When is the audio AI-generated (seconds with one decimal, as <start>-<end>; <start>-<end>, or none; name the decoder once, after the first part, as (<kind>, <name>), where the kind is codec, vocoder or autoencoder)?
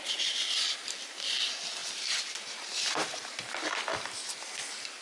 1.8-4.0 (vocoder, BigVGAN v2)